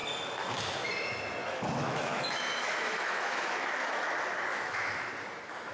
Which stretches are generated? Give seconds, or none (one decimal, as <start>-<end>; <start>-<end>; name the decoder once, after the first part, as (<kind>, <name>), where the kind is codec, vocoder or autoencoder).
1.4-4.1 (autoencoder, DAC-VAE); 4.5-5.1